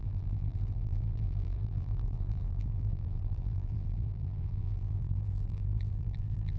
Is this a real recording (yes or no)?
no